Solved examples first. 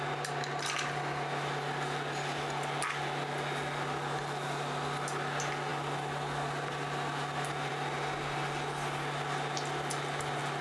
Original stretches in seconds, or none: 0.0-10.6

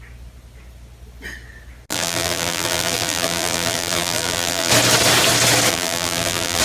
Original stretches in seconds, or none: 0.0-1.9; 4.7-5.7

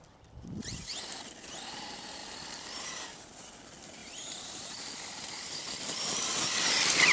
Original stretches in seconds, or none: 0.0-2.2; 2.9-4.0; 5.5-7.1

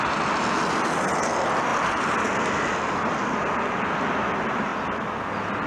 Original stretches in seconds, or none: 0.0-5.7

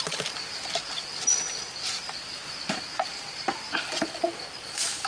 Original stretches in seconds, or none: 0.8-1.7

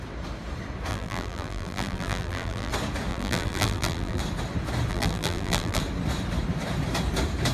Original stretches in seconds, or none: 0.0-0.9; 2.7-3.1; 4.2-4.9; 5.8-7.5

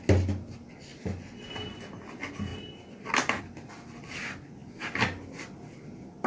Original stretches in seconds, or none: 0.0-6.3

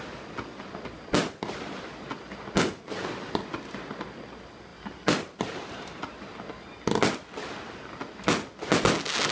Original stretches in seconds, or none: 0.0-4.7; 6.0-9.3